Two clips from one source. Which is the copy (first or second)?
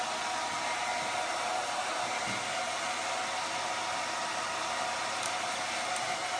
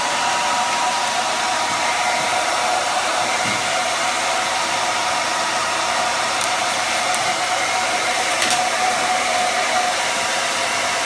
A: second